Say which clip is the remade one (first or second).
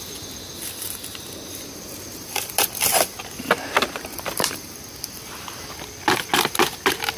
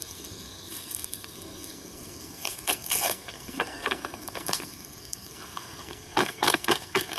second